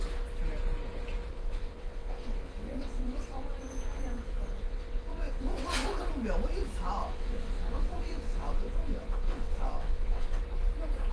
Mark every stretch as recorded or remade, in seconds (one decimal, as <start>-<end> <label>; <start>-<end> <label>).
0.0-1.3 recorded; 1.3-6.0 remade; 6.0-7.0 recorded; 7.0-10.4 remade; 10.4-11.1 recorded